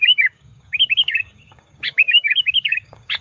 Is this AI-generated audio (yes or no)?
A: yes